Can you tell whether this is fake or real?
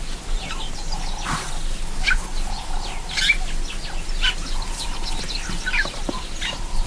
real